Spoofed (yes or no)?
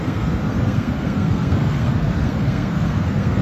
yes